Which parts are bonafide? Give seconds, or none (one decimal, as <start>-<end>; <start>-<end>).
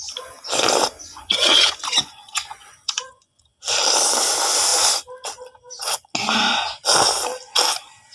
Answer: 0.0-1.0; 3.4-8.1